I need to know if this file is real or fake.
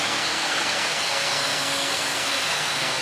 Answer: fake